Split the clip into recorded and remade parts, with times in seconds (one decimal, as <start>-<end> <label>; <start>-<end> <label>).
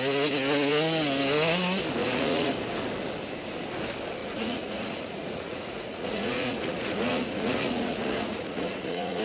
0.0-2.0 recorded; 2.0-2.5 remade; 2.5-4.2 recorded; 4.2-9.2 remade